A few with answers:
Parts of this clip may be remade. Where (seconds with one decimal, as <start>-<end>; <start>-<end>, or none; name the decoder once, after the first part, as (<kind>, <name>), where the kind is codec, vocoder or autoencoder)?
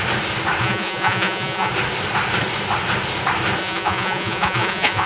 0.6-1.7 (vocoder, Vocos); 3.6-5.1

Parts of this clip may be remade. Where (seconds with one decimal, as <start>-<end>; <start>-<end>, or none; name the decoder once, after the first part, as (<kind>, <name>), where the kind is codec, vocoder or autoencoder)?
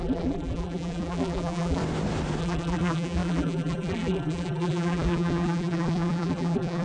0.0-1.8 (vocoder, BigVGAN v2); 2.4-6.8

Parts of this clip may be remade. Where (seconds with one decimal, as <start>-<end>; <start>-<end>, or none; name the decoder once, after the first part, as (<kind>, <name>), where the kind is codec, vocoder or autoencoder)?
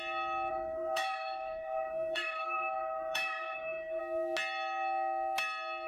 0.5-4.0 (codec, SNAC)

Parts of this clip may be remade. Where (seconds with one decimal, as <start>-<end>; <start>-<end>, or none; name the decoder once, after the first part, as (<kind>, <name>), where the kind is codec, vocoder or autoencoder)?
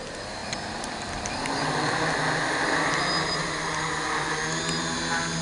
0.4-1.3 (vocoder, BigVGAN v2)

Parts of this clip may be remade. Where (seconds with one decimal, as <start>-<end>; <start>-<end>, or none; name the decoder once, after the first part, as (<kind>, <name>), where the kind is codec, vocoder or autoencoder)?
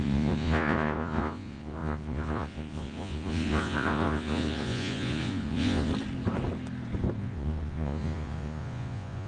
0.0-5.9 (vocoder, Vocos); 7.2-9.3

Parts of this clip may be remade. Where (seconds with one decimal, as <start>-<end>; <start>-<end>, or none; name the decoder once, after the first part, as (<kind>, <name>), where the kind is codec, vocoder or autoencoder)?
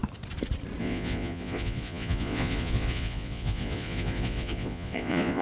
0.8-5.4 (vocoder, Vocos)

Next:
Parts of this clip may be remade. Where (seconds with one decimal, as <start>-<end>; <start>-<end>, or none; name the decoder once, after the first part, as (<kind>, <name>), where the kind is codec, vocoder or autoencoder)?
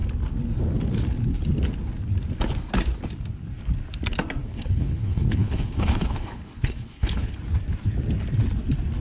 4.4-7.4 (codec, HILCodec)